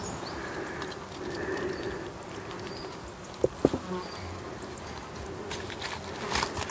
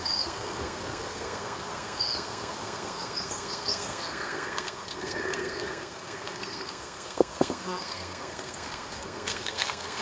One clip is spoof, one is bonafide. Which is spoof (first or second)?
second